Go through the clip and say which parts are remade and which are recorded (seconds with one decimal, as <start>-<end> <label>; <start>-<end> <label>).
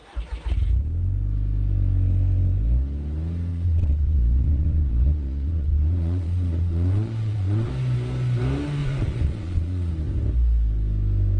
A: 0.0-3.5 recorded; 3.5-7.7 remade; 7.7-8.8 recorded; 8.8-9.9 remade; 9.9-11.4 recorded